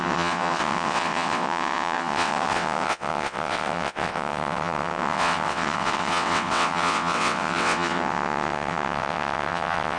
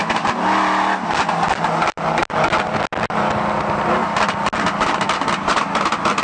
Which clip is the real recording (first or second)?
second